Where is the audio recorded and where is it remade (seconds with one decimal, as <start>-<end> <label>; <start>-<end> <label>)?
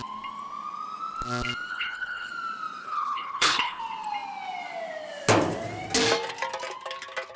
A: 0.0-1.7 recorded; 1.7-2.3 remade; 2.3-2.8 recorded; 2.8-3.8 remade; 3.8-7.4 recorded